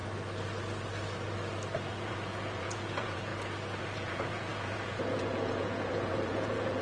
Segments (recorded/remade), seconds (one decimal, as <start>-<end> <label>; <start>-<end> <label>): 0.0-1.9 recorded; 1.9-3.3 remade; 3.3-3.8 recorded; 3.8-6.8 remade

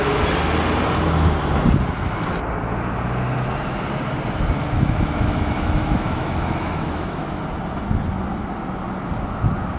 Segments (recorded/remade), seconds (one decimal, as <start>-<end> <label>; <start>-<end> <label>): 0.0-4.6 recorded; 4.6-7.4 remade; 7.4-9.8 recorded

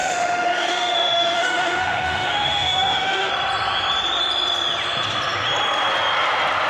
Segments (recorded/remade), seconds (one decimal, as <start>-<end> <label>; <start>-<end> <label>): 0.0-3.3 remade; 3.3-6.7 recorded

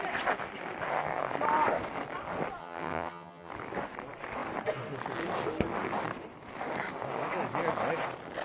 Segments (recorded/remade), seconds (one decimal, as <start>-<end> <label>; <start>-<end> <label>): 0.0-2.6 recorded; 2.6-3.5 remade; 3.5-8.4 recorded

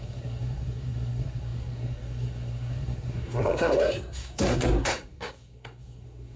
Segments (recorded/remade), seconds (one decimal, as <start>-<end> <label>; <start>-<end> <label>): 0.0-6.4 remade